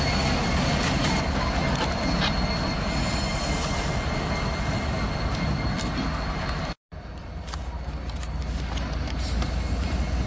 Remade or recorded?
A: recorded